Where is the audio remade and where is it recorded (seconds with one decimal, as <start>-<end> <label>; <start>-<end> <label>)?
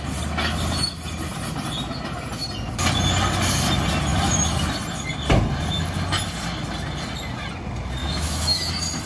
0.0-8.0 recorded; 8.0-8.7 remade; 8.7-9.1 recorded